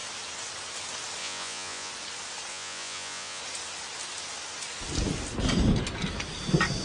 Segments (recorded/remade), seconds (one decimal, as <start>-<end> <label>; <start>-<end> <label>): 0.0-1.2 recorded; 1.2-1.9 remade; 1.9-2.5 recorded; 2.5-3.4 remade; 3.4-6.8 recorded